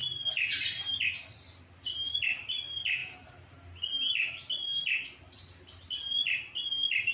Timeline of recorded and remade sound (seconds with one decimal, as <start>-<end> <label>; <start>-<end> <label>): 0.0-7.1 recorded